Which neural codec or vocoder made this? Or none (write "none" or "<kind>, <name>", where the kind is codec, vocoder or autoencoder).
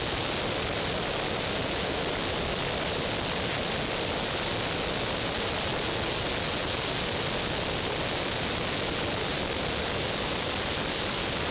none